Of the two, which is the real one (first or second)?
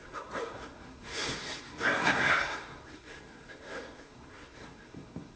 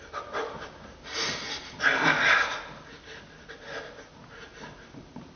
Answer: second